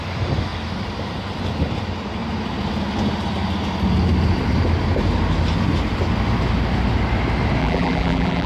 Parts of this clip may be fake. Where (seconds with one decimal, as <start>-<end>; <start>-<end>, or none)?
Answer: 7.6-8.5